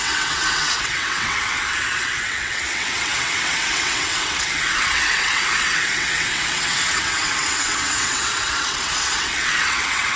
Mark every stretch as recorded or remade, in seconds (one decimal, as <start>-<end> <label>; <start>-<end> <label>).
0.0-10.2 remade

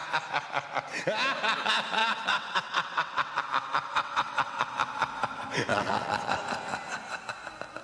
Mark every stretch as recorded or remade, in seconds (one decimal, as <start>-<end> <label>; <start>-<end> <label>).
0.0-2.0 recorded; 2.0-3.4 remade; 3.4-3.9 recorded; 3.9-4.7 remade; 4.7-5.7 recorded; 5.7-6.3 remade; 6.3-7.8 recorded

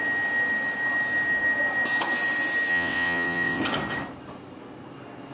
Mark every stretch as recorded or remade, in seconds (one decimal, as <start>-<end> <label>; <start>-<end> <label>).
0.0-2.7 recorded; 2.7-3.6 remade; 3.6-5.3 recorded

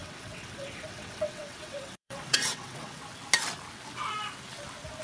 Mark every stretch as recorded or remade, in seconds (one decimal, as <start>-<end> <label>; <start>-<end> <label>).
0.0-3.0 remade; 3.0-5.0 recorded

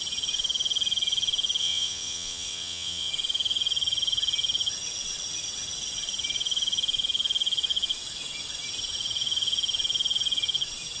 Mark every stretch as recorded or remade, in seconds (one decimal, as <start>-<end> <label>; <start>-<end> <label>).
0.0-1.6 recorded; 1.6-3.1 remade; 3.1-11.0 recorded

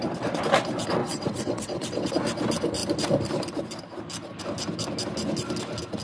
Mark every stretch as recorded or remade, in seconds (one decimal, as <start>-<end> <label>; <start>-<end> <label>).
0.0-1.0 recorded; 1.0-2.1 remade; 2.1-6.0 recorded

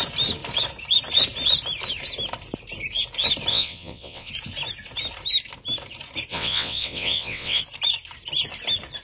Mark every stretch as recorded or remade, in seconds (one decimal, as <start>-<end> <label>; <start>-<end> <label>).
0.0-3.5 recorded; 3.5-4.3 remade; 4.3-6.3 recorded; 6.3-7.6 remade; 7.6-9.0 recorded

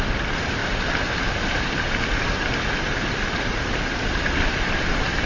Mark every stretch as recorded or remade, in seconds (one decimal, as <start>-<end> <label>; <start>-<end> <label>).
0.0-5.3 recorded